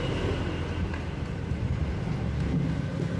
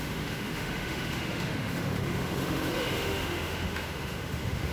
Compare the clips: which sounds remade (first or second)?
second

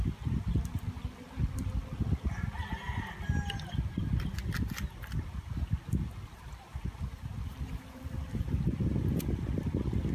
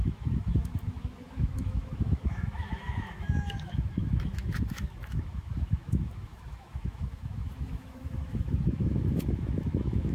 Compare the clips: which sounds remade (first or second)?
second